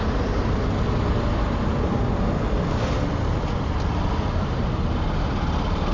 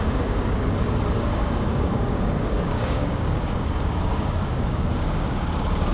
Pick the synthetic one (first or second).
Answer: second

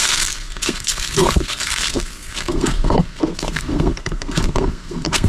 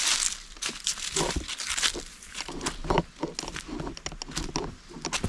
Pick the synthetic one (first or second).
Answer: first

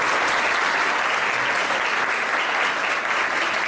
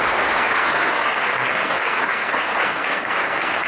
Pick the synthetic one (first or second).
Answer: second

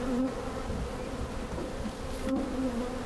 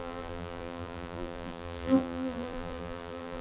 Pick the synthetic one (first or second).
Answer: second